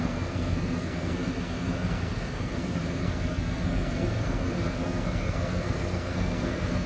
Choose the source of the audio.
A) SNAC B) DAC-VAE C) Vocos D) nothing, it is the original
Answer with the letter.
A